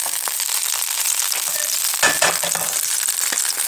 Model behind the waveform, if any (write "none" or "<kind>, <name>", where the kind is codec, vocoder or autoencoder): none